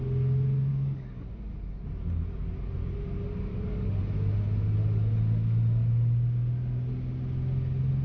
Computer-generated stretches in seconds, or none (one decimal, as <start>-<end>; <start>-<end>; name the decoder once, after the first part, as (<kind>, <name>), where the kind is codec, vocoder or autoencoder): 0.7-1.2 (codec, DAC); 3.5-4.0